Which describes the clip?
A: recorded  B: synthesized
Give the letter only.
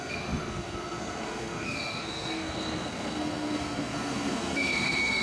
B